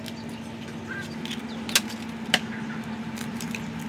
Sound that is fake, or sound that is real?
real